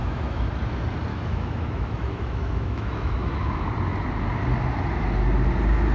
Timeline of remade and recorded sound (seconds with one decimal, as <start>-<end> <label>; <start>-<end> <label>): 0.0-0.5 remade; 0.5-1.1 recorded; 1.1-3.7 remade; 3.7-5.9 recorded